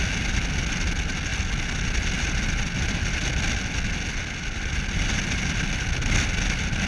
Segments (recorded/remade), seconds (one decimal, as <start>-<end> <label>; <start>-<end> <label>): 0.0-6.9 recorded

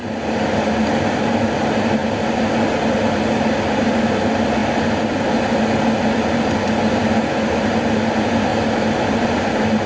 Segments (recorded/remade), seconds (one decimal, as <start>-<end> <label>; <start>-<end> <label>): 0.0-9.9 recorded

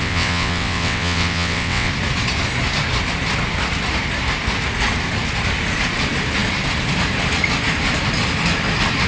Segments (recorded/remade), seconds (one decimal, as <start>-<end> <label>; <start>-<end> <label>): 0.0-1.9 remade; 1.9-9.1 recorded

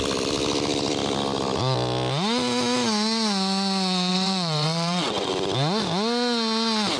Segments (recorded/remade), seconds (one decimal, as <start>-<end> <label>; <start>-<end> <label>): 0.0-4.1 recorded; 4.1-5.3 remade; 5.3-7.0 recorded